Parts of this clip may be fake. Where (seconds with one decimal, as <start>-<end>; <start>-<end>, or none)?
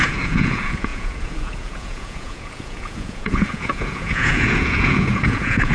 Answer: 0.0-5.7